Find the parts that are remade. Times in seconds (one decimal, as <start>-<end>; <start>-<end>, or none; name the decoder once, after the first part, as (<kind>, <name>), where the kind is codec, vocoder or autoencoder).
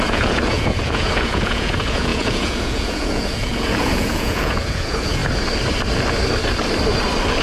0.0-5.2 (vocoder, Vocos)